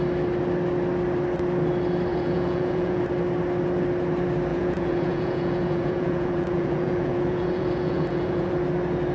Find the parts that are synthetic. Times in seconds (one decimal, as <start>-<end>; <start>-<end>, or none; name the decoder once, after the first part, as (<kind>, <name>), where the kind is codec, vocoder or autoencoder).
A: 2.1-3.0 (vocoder, Vocos); 4.5-8.5